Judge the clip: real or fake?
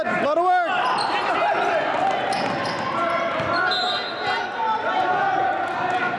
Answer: real